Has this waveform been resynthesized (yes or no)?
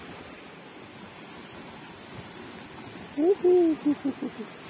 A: no